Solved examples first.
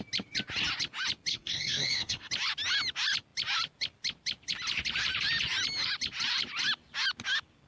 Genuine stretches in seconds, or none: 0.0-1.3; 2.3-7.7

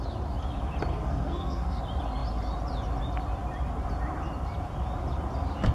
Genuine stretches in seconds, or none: 0.0-0.9; 1.8-5.7

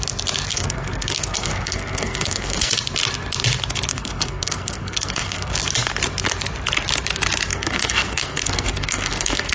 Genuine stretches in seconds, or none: 0.0-0.5; 2.7-3.9; 5.5-7.5

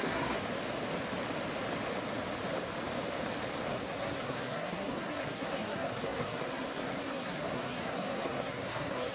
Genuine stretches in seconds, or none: 0.4-3.7

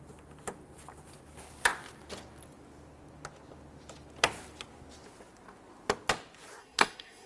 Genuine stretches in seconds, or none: 0.0-6.6

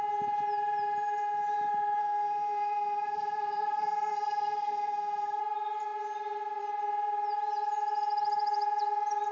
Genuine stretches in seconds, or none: 0.0-2.0; 5.4-9.3